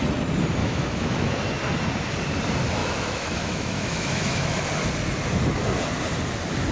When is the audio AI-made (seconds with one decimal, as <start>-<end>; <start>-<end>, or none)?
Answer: 0.6-1.3; 2.8-4.7